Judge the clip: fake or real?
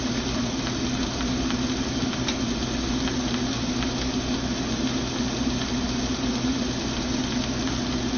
real